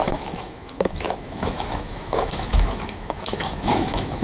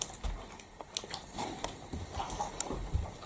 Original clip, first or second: second